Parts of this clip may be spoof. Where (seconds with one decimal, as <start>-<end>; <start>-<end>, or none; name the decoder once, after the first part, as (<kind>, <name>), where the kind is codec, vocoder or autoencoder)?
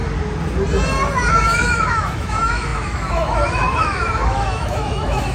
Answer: 1.3-5.3 (autoencoder, DAC-VAE)